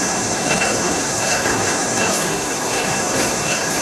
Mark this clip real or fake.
fake